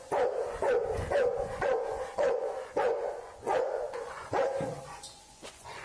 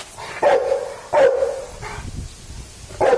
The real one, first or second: second